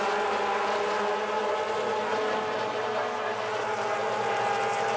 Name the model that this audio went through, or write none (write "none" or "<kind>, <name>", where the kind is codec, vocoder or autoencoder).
none